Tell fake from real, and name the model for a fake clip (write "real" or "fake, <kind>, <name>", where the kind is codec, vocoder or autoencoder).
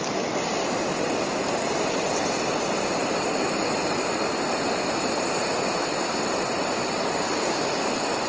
real